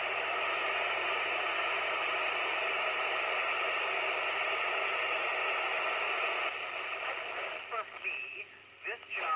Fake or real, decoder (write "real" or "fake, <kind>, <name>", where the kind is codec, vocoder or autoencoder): real